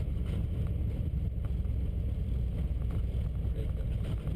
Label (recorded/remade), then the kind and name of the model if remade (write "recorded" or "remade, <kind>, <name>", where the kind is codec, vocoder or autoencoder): recorded